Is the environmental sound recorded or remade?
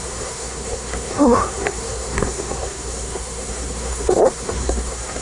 remade